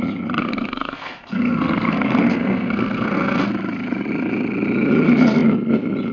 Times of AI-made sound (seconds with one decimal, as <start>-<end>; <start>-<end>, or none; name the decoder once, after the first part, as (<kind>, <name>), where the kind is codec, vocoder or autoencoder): 0.4-3.5 (codec, SNAC)